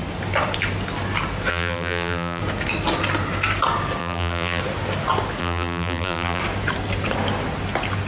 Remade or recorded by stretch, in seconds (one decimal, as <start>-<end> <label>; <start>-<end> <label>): 0.0-1.5 recorded; 1.5-2.4 remade; 2.4-4.0 recorded; 4.0-4.6 remade; 4.6-5.4 recorded; 5.4-6.4 remade; 6.4-8.1 recorded